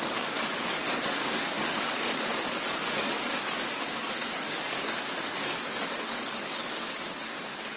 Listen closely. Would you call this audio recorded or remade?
remade